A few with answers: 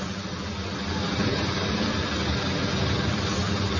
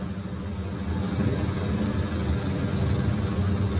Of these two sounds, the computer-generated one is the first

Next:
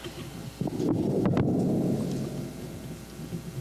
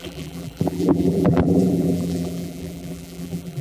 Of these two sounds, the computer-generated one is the second